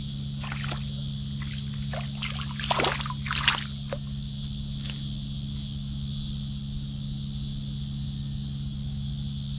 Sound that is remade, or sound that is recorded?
recorded